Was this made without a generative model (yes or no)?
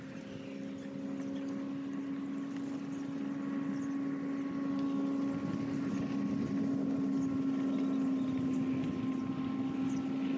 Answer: yes